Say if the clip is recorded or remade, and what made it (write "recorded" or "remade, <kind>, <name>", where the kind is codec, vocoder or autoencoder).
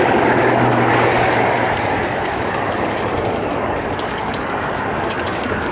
remade, codec, DAC